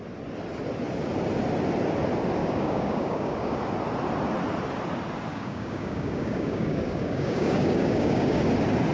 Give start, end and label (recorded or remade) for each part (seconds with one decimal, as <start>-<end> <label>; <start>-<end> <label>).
0.0-2.4 recorded; 2.4-3.6 remade; 3.6-5.3 recorded; 5.3-8.4 remade; 8.4-8.9 recorded